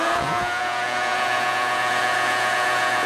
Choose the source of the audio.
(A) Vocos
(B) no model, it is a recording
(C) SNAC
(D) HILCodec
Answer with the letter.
A